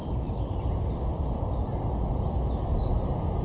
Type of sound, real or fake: real